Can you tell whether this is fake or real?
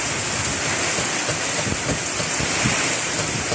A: real